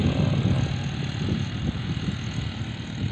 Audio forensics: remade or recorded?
recorded